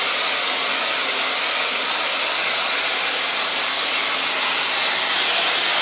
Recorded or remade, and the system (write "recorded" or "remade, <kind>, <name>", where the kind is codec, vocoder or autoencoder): recorded